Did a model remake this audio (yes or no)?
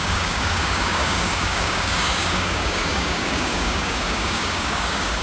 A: yes